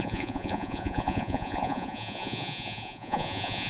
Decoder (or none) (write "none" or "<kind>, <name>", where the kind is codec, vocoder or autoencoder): vocoder, Vocos